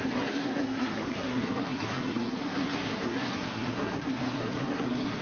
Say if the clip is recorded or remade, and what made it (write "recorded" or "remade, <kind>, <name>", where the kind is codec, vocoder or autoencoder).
remade, codec, SNAC